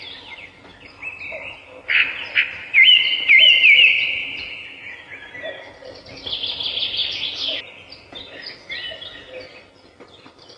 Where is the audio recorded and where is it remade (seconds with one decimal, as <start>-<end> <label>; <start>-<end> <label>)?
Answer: 0.0-10.6 recorded

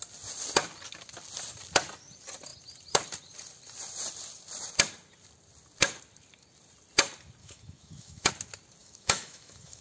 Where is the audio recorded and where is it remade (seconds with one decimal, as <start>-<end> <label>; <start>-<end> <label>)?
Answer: 0.0-7.4 recorded; 7.4-8.3 remade; 8.3-8.8 recorded; 8.8-9.8 remade

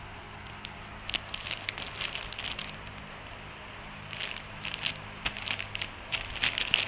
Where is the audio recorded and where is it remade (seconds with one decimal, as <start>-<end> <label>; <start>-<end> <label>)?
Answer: 0.0-6.9 recorded

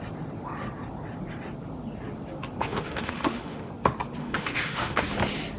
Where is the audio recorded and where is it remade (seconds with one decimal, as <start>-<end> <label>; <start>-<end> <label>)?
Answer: 0.0-2.6 recorded; 2.6-3.7 remade; 3.7-4.2 recorded; 4.2-5.0 remade; 5.0-5.6 recorded

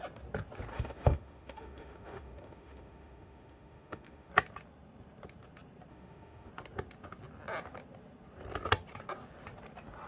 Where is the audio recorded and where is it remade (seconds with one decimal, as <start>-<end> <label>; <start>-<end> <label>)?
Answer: 0.0-0.7 recorded; 0.7-4.3 remade; 4.3-5.9 recorded; 5.9-6.5 remade; 6.5-10.1 recorded

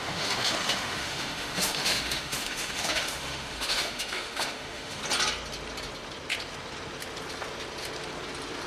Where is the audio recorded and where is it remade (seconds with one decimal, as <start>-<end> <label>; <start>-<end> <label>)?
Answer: 0.0-5.0 remade; 5.0-8.7 recorded